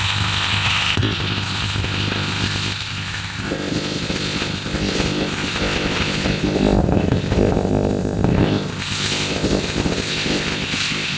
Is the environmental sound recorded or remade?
remade